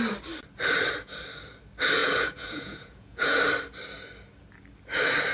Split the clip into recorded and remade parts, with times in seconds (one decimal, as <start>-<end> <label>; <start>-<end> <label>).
0.0-2.0 recorded; 2.0-3.4 remade; 3.4-5.3 recorded